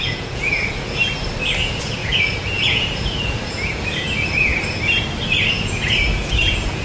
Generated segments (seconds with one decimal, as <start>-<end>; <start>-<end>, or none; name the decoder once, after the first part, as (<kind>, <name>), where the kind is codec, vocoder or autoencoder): 0.0-1.0 (vocoder, Vocos); 1.6-4.5; 5.5-6.8